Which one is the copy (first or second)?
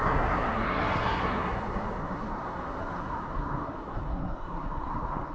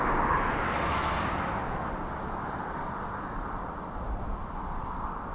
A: first